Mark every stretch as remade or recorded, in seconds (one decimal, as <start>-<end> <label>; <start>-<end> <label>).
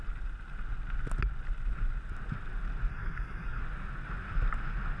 0.0-2.9 recorded; 2.9-3.6 remade; 3.6-5.0 recorded